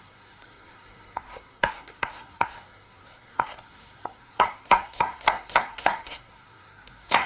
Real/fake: fake